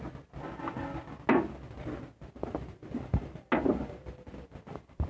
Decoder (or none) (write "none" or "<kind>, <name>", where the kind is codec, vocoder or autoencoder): none